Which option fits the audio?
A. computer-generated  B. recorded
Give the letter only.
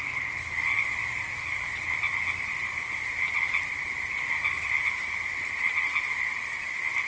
B